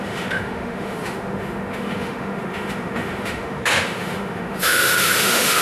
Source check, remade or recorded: remade